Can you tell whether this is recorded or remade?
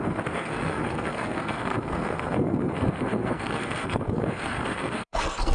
remade